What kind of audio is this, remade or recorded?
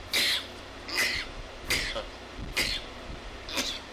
recorded